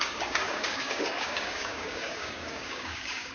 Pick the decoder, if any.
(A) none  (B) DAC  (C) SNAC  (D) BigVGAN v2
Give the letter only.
B